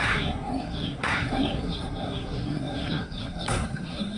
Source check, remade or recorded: remade